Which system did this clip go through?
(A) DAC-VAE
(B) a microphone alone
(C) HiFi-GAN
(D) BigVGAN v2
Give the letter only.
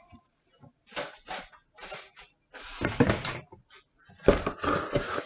B